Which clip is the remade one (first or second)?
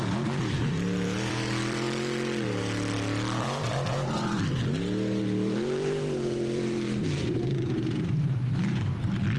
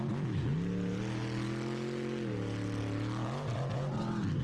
first